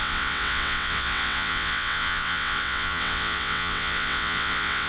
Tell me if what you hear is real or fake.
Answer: fake